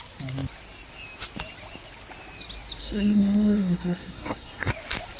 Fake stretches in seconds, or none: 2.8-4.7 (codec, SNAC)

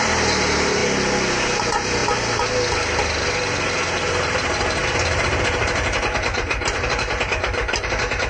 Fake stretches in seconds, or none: 0.0-0.8 (vocoder, BigVGAN v2); 1.6-2.0; 4.1-8.3

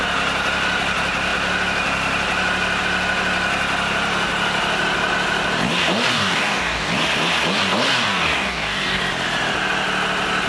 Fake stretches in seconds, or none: 6.1-6.9 (codec, DAC); 7.9-9.0